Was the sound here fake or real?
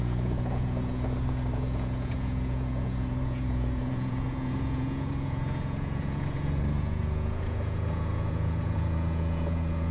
fake